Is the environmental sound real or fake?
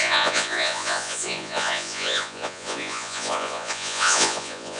fake